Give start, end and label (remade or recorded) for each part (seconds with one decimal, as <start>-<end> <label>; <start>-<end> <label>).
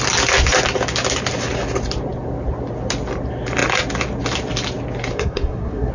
0.0-5.1 recorded; 5.1-5.9 remade